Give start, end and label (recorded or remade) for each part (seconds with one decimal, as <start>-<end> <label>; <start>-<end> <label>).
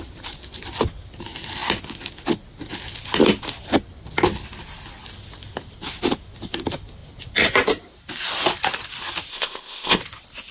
0.0-9.3 recorded; 9.3-10.0 remade; 10.0-10.5 recorded